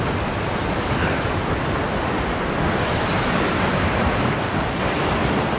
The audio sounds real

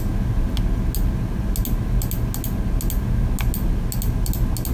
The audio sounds real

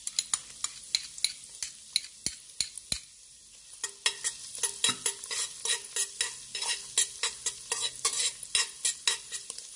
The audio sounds real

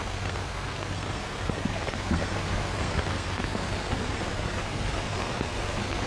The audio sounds fake